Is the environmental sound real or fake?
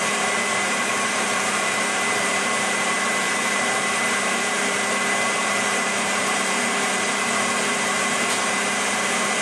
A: fake